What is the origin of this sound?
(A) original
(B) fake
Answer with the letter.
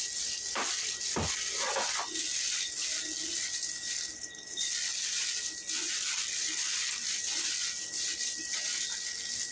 A